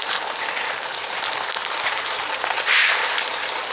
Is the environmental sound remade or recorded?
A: recorded